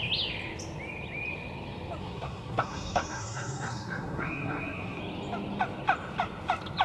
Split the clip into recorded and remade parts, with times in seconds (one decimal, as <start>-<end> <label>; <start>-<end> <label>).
0.0-2.0 recorded; 2.0-5.0 remade; 5.0-6.8 recorded